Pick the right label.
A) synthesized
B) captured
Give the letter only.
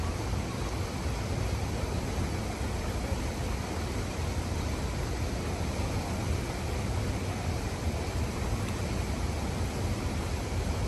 B